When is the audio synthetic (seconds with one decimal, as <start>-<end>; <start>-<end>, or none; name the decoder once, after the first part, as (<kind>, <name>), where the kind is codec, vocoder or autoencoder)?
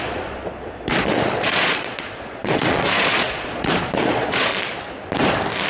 0.0-4.5 (vocoder, Vocos)